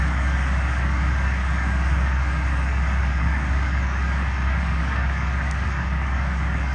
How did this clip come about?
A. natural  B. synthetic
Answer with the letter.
B